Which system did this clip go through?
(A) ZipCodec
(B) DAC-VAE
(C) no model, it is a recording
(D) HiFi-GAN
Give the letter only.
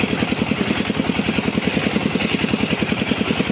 C